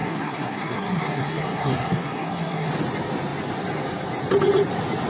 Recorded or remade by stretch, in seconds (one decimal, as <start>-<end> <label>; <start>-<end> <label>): 0.0-2.7 remade; 2.7-5.1 recorded